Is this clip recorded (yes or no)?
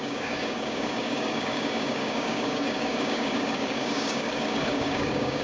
no